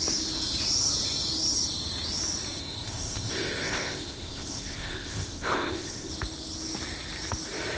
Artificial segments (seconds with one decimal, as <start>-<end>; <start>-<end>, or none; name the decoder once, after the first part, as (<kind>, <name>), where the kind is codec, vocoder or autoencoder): 2.6-6.1 (codec, ZipCodec)